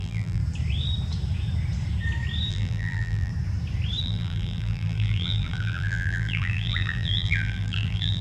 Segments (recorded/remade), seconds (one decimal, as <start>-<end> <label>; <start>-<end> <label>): 0.0-0.4 remade; 0.4-2.5 recorded; 2.5-3.3 remade; 3.3-4.0 recorded; 4.0-8.2 remade